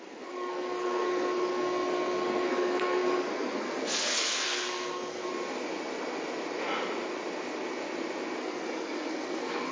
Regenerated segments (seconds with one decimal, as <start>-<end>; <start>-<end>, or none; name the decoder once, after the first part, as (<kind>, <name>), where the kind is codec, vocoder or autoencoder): 0.0-5.3 (codec, SNAC); 8.4-9.7